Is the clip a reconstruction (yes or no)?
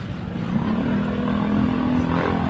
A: no